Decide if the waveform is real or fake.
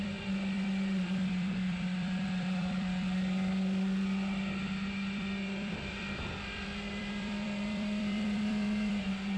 fake